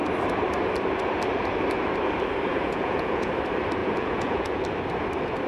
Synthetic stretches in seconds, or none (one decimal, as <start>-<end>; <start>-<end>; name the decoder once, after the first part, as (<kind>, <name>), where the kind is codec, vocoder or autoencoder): 2.5-3.3 (vocoder, Vocos); 3.8-4.6